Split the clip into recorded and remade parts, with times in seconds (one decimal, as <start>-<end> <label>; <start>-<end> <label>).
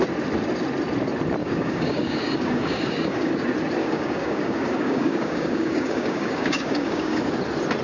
0.0-1.4 recorded; 1.4-3.3 remade; 3.3-3.8 recorded; 3.8-7.2 remade; 7.2-7.8 recorded